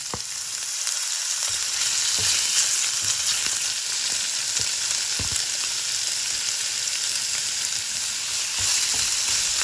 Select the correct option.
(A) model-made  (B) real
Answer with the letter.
B